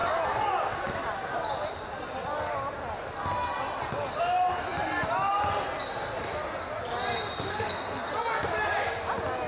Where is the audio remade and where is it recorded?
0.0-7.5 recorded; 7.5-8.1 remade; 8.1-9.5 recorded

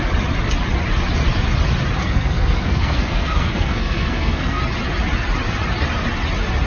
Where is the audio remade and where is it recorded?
0.0-2.0 recorded; 2.0-4.6 remade; 4.6-6.7 recorded